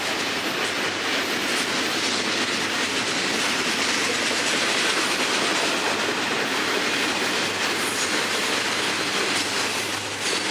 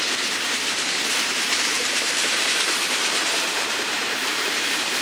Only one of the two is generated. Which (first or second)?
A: second